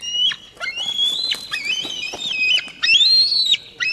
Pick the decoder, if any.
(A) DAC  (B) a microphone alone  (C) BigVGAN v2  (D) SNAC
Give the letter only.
B